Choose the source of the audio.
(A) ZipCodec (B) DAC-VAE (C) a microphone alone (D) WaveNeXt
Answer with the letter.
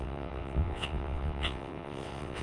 D